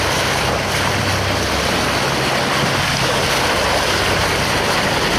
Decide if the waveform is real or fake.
real